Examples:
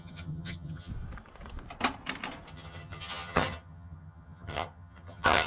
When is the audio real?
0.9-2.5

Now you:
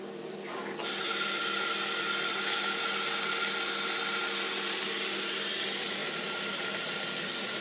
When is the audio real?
0.0-7.6

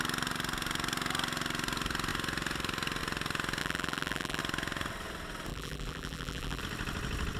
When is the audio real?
0.0-3.6; 4.4-5.5; 6.6-7.4

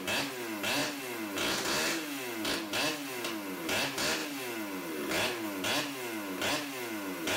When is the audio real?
0.0-7.4